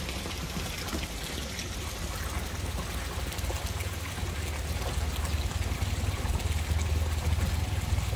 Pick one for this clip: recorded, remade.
recorded